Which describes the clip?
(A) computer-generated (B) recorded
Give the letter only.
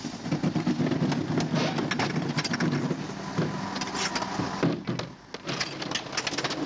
B